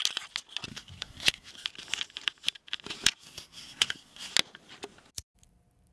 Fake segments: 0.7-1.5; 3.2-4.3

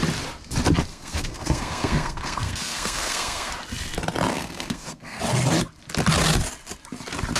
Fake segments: 0.9-3.5; 4.3-5.2

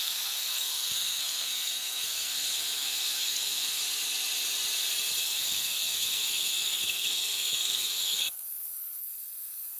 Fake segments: 0.0-3.8; 5.2-9.8

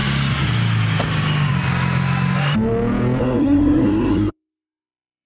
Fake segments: 3.2-5.3

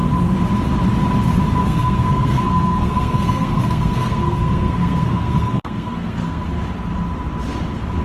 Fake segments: 1.6-6.4

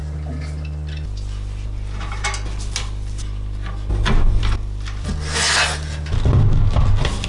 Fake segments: none

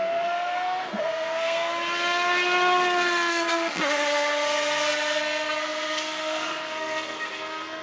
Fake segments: 0.0-1.7; 3.3-7.8